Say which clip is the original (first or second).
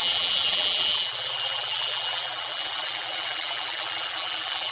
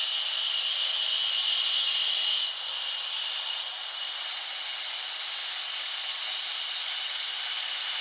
second